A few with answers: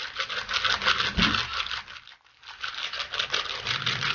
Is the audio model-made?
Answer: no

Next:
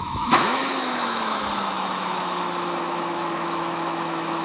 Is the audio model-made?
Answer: yes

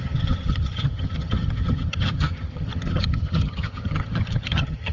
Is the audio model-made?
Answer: yes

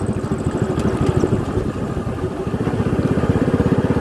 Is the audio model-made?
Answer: yes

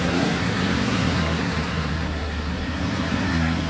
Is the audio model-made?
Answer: yes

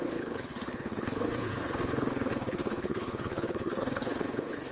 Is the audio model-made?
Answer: yes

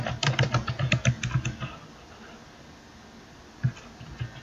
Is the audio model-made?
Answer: no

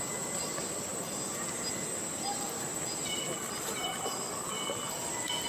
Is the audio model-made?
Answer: no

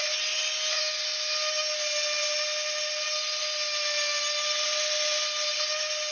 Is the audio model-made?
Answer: no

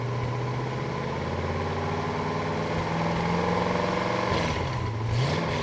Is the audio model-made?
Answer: no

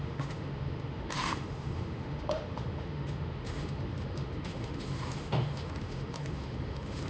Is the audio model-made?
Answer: yes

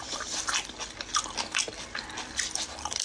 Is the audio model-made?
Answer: no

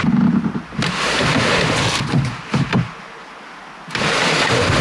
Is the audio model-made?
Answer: no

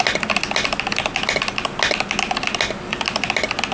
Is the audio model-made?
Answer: no